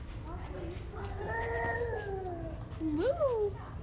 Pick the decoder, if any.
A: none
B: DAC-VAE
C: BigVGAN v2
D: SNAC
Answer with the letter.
A